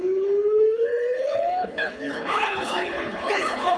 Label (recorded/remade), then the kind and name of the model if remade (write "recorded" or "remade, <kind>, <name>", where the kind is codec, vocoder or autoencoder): remade, codec, HILCodec